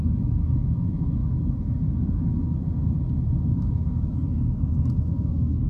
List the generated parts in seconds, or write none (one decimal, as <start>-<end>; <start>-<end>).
0.0-1.2; 3.5-5.7